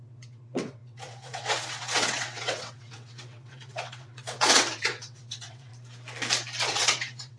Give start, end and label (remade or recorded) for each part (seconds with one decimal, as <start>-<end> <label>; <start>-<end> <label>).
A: 0.0-5.7 remade; 5.7-6.6 recorded; 6.6-7.4 remade